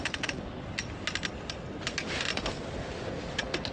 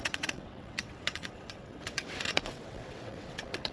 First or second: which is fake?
second